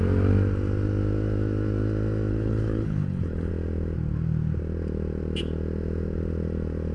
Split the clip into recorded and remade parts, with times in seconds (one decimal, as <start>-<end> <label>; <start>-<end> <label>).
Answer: 0.0-2.3 recorded; 2.3-3.5 remade; 3.5-6.9 recorded